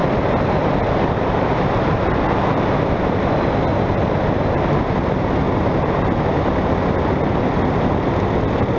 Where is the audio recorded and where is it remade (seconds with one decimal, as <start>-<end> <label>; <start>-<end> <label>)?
0.0-8.8 recorded

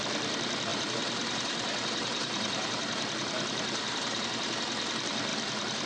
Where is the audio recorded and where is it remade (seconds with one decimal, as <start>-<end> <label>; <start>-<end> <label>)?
0.0-0.7 recorded; 0.7-4.2 remade; 4.2-5.9 recorded

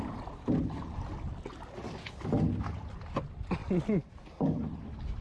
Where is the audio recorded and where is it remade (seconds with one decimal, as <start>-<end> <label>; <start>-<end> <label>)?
0.0-5.2 recorded

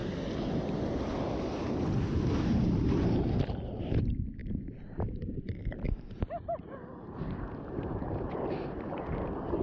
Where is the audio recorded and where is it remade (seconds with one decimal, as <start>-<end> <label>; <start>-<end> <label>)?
0.0-3.8 recorded; 3.8-9.6 remade

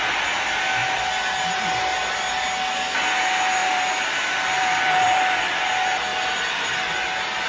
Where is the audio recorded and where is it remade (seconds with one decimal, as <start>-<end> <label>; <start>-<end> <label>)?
0.0-3.6 recorded; 3.6-5.4 remade; 5.4-6.1 recorded; 6.1-6.9 remade; 6.9-7.5 recorded